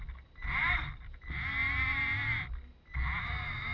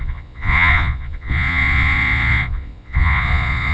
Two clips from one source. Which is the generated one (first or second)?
second